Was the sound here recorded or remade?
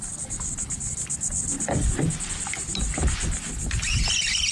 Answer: recorded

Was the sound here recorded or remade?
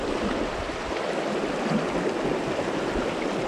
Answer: recorded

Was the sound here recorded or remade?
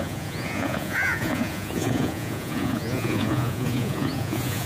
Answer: remade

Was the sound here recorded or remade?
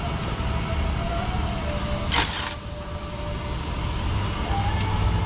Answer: recorded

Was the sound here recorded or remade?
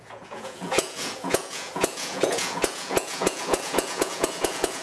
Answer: remade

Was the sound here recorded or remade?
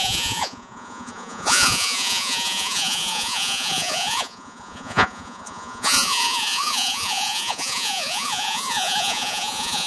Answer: remade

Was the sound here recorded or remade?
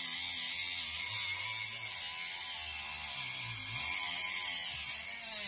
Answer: recorded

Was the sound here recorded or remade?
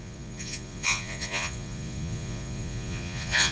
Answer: remade